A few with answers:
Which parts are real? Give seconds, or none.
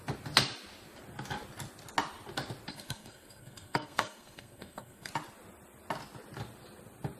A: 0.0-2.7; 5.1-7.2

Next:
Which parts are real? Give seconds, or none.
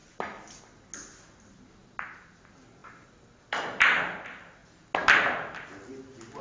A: 0.6-2.8; 4.0-6.4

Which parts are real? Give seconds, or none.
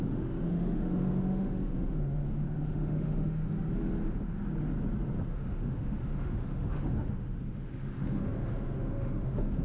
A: 3.7-5.3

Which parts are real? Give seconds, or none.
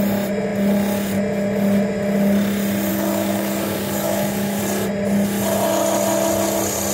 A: 0.0-2.9; 4.6-6.9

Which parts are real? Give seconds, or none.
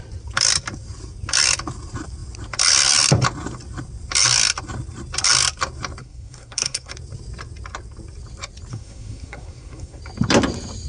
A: 0.0-6.0; 6.9-8.7; 10.0-10.9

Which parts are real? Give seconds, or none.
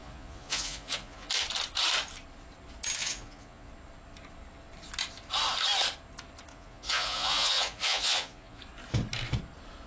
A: 1.3-3.0; 3.7-6.5; 8.6-9.9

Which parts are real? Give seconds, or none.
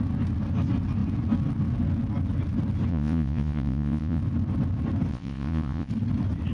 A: 0.0-2.9; 4.2-5.1; 5.9-6.5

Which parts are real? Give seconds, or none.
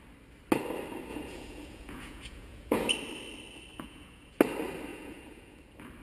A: 0.0-1.1; 2.9-3.7; 4.3-4.9; 5.6-6.0